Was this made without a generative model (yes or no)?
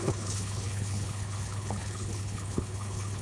no